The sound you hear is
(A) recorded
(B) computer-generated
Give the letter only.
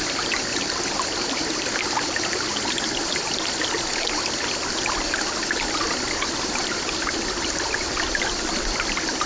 A